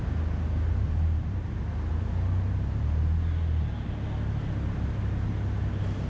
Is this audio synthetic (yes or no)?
no